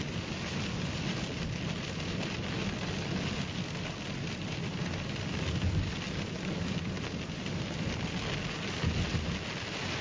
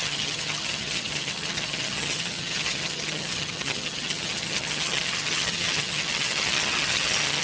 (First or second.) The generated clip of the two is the second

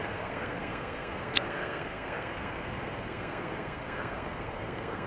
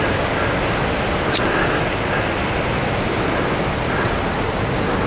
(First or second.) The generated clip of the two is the first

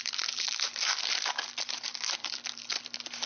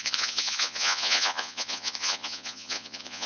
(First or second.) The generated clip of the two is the second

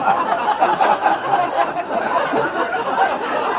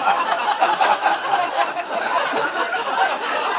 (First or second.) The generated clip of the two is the second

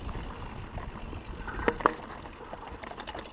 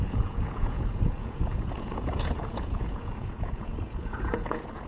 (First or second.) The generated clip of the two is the second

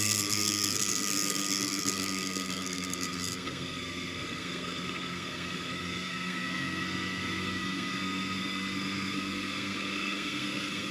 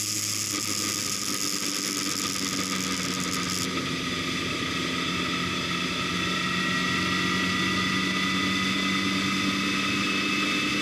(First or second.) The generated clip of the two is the first